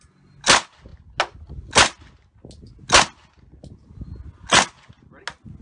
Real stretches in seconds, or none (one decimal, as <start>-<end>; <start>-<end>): 0.0-5.6